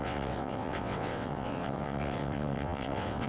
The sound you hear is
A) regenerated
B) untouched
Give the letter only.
A